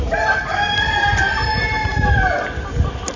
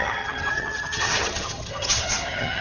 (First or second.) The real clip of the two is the first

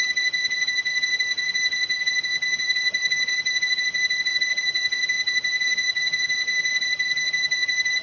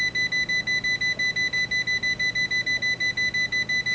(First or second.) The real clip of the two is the second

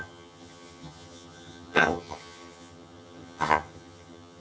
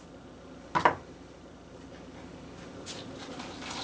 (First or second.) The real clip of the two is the second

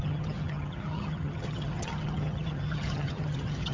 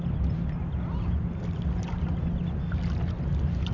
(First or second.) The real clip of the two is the second